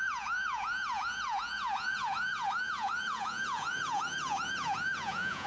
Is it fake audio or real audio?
fake